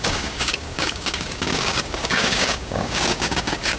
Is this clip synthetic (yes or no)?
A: yes